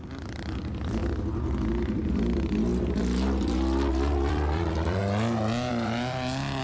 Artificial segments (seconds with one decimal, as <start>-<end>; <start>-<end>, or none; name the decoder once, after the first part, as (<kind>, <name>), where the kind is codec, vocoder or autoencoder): 0.0-1.0 (vocoder, BigVGAN v2); 1.8-2.7; 3.9-5.0; 5.7-6.6